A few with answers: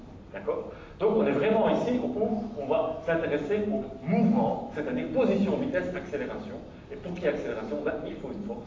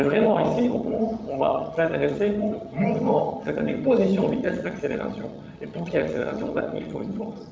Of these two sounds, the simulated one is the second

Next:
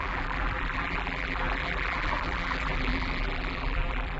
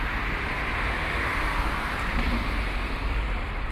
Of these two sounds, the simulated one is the first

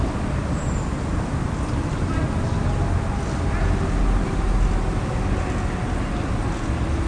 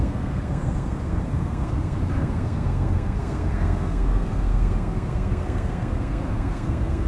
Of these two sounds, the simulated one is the second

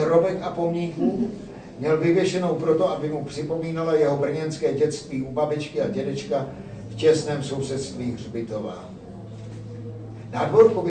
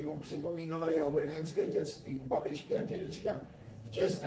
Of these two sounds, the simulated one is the second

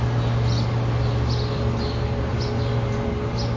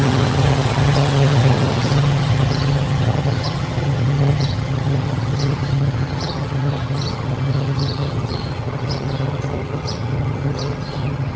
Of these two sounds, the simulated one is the second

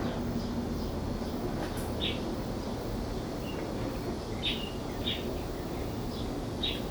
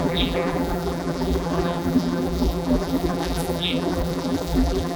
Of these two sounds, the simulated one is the second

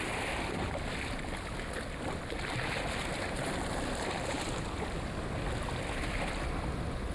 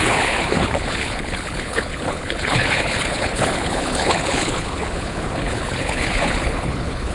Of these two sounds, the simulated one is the second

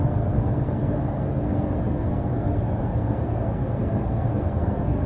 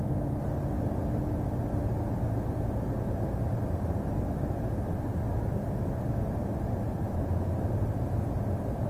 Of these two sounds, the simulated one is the first